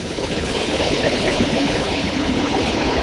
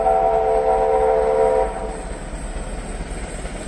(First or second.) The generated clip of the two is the first